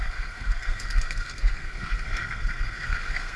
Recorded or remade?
remade